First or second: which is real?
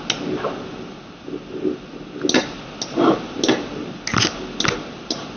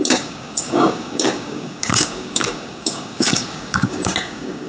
first